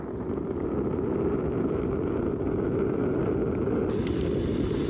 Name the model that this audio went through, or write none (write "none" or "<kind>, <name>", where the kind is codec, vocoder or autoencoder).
none